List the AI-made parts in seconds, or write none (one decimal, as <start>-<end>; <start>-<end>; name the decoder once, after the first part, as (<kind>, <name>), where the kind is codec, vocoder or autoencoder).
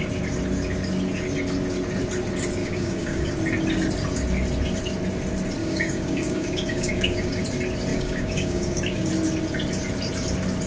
2.6-3.3 (codec, DAC); 5.6-7.4; 7.9-9.1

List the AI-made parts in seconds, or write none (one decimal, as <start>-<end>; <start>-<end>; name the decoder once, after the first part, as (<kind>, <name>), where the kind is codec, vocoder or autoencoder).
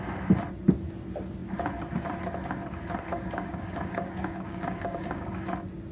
3.1-5.4 (codec, DAC)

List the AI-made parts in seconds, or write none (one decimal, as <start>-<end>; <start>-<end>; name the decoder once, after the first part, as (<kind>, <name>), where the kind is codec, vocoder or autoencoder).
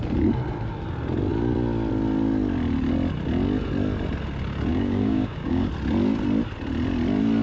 4.7-5.7 (codec, DAC)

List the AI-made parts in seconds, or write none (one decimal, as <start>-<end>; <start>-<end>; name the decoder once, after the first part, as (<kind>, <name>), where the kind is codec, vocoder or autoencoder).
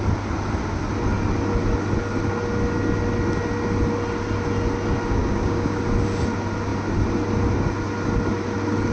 5.2-5.8 (codec, DAC)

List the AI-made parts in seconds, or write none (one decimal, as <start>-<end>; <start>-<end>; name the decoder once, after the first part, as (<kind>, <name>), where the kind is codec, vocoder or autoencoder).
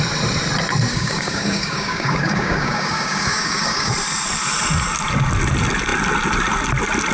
0.9-3.9 (codec, DAC)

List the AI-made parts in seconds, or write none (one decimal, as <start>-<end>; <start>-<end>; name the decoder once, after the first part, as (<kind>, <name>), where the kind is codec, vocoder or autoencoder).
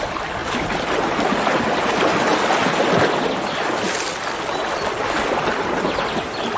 none